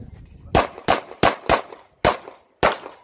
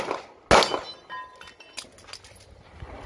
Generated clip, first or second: first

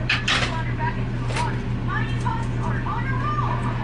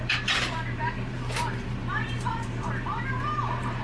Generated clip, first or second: second